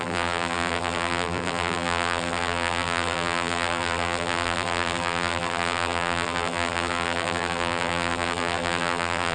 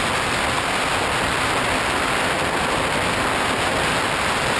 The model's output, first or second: first